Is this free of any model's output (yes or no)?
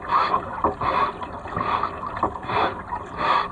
yes